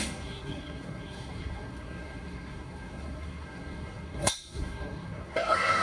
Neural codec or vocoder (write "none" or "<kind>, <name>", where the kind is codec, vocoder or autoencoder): codec, SNAC